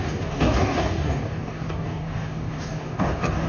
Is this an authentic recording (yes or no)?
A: no